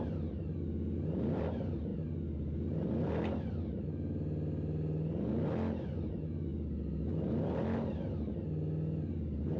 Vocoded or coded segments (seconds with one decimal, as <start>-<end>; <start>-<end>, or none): none